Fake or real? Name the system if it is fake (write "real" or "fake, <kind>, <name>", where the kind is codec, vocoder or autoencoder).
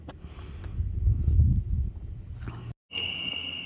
real